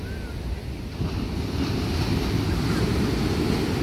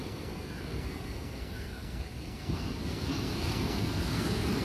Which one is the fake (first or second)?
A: second